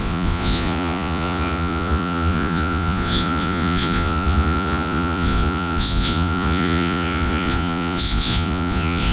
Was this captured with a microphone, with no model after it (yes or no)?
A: no